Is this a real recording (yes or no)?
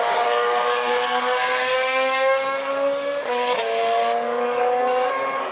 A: no